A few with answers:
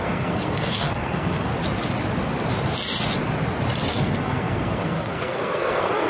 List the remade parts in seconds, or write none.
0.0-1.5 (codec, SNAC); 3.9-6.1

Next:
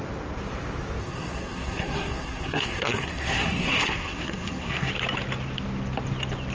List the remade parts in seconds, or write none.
1.0-4.9 (codec, SNAC)

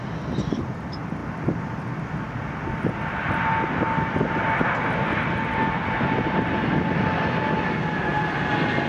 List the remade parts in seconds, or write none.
none

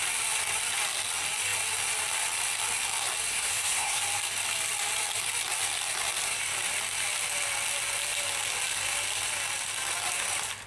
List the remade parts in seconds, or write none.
3.3-4.0 (codec, SNAC)

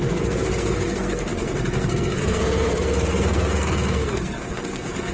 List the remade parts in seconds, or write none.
0.0-5.1 (codec, SNAC)

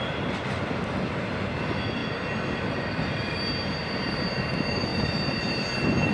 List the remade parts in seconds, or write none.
none